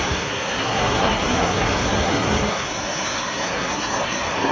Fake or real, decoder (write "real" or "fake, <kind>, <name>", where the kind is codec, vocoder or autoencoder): fake, codec, SNAC